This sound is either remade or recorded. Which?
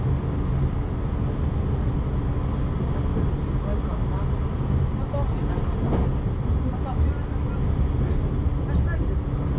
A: recorded